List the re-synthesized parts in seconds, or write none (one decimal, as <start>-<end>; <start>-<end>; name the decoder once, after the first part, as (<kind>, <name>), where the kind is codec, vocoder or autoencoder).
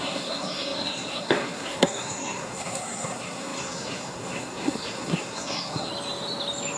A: 0.0-5.9 (codec, SNAC)